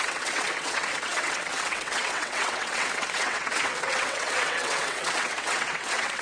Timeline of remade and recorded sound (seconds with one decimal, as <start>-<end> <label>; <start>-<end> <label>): 0.0-6.2 remade